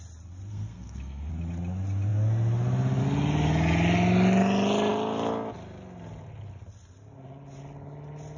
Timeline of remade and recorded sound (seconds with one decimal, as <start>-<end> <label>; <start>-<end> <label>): 0.0-0.5 recorded; 0.5-1.3 remade; 1.3-8.4 recorded